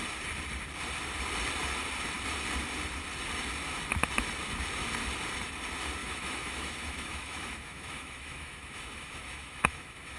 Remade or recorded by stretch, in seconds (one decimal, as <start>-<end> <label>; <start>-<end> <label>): 0.0-6.0 recorded; 6.0-10.2 remade